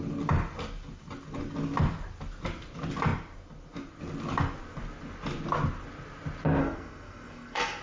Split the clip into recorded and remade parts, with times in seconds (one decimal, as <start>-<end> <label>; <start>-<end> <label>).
0.0-6.6 recorded; 6.6-7.8 remade